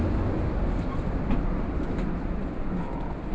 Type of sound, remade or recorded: recorded